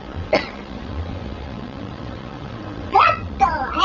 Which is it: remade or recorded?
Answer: remade